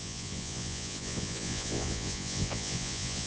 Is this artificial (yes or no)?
yes